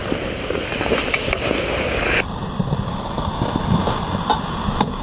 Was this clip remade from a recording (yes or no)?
yes